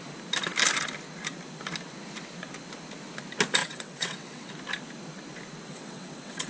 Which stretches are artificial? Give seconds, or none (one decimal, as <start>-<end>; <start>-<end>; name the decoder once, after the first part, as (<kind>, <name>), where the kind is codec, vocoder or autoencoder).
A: 3.6-4.5 (vocoder, WaveNeXt); 5.7-6.5